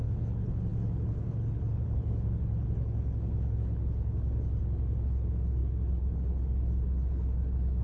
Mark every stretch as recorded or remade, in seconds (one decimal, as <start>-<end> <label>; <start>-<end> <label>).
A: 0.0-7.8 remade